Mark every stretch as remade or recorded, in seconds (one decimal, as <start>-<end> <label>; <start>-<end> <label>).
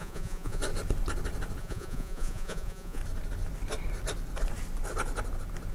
0.0-0.6 remade; 0.6-1.6 recorded; 1.6-3.0 remade; 3.0-5.7 recorded